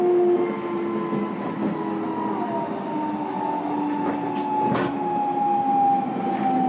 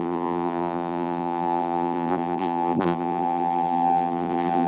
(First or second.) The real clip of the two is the first